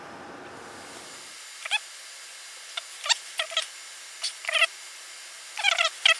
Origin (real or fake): real